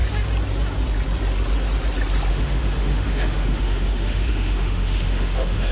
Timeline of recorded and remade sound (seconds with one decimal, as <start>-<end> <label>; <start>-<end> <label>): 0.0-2.3 recorded; 2.3-5.7 remade